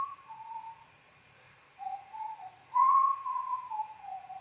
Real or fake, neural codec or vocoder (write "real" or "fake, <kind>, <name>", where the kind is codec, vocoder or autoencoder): fake, vocoder, Vocos